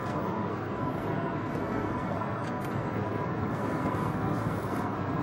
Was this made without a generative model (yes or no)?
no